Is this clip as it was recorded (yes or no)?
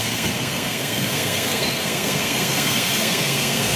no